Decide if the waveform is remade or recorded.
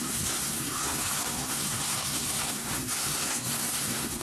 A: remade